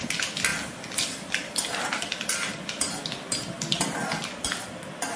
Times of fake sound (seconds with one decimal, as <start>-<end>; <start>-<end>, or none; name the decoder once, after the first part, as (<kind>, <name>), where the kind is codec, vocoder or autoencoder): none